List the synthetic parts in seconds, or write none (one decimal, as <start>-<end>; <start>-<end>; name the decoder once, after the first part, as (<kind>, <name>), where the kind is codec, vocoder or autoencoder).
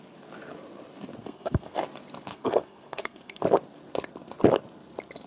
1.2-1.8 (codec, SNAC); 2.3-3.4